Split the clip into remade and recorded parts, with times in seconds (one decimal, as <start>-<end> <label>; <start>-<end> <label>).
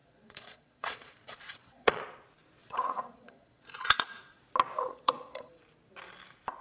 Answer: 0.0-2.0 remade; 2.0-2.6 recorded; 2.6-4.4 remade; 4.4-4.9 recorded; 4.9-5.6 remade; 5.6-6.6 recorded